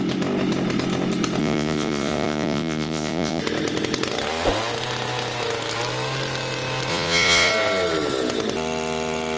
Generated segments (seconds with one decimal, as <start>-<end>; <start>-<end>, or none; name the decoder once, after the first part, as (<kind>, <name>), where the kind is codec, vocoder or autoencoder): 1.4-3.4 (vocoder, Vocos); 6.9-7.5